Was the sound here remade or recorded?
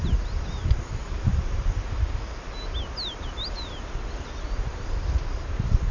recorded